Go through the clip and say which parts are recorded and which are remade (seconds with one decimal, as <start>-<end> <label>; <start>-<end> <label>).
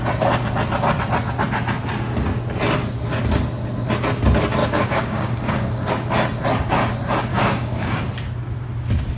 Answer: 0.0-4.6 recorded; 4.6-5.9 remade; 5.9-7.3 recorded; 7.3-8.0 remade; 8.0-9.2 recorded